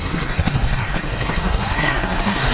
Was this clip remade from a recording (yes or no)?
yes